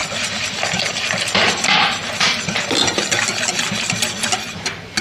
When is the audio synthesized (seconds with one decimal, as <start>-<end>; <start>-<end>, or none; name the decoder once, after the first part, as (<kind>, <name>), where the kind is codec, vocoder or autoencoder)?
0.0-2.6 (vocoder, BigVGAN v2)